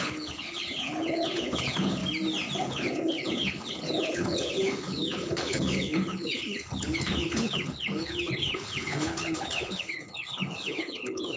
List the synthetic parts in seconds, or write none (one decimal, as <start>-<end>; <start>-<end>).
0.0-2.0; 2.6-11.4